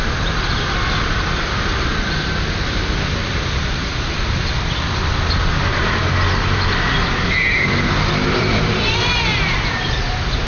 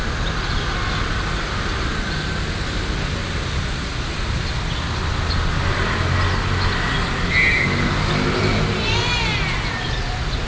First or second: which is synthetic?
first